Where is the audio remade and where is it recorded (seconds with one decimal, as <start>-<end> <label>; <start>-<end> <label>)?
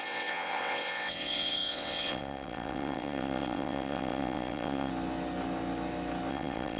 0.0-4.9 remade; 4.9-6.3 recorded; 6.3-6.8 remade